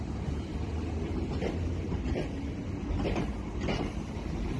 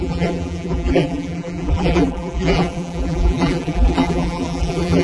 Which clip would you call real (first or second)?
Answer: first